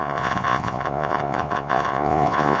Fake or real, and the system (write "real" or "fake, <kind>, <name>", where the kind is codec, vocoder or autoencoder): fake, vocoder, Vocos